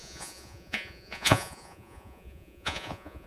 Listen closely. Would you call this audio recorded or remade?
remade